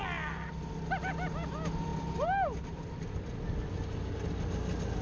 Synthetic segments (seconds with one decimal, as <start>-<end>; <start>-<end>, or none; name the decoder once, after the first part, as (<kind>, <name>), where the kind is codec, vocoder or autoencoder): none

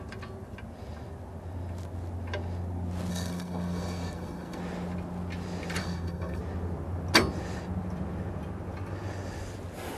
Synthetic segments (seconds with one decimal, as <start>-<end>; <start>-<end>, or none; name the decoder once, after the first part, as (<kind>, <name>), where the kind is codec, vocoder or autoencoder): 3.1-4.6 (codec, SNAC); 5.8-6.4

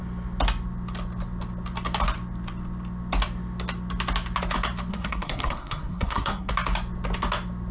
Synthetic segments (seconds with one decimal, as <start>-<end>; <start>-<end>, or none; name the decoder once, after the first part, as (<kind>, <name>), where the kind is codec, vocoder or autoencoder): 4.9-6.5 (codec, SNAC)

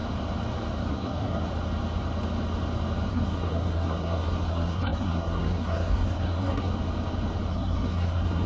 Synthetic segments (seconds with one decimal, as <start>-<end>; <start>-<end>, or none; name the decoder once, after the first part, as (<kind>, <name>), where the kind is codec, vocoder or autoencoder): 0.9-1.5 (codec, SNAC); 3.1-6.7; 7.5-8.5